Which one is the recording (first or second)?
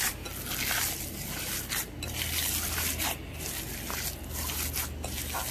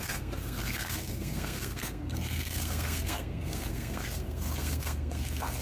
first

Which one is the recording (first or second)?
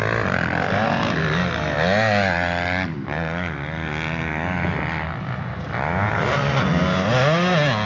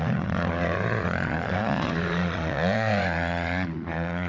first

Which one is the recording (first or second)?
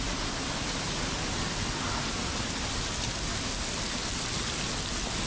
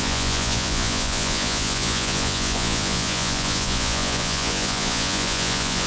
first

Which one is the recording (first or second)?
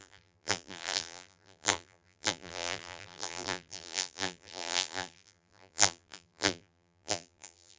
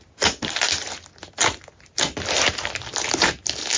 second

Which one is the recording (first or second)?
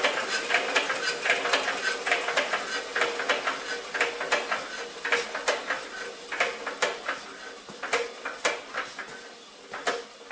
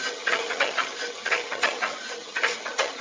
first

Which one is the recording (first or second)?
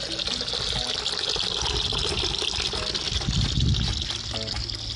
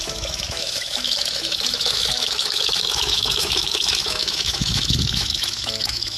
first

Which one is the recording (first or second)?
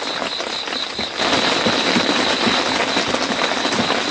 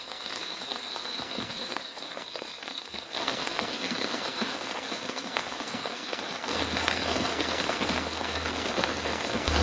first